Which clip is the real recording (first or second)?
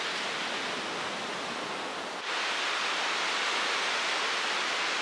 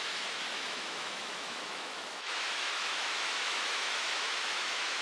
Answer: first